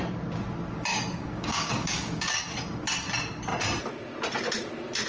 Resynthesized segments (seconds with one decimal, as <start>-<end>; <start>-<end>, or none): 0.9-2.4